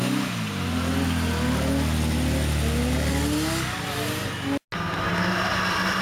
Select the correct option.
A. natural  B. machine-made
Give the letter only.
A